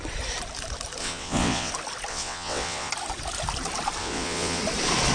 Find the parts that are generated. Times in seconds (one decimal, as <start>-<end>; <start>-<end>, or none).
1.0-1.7; 2.1-2.9; 4.0-4.6